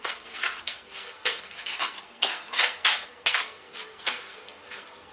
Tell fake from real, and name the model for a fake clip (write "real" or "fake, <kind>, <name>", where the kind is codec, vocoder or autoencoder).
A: fake, codec, SNAC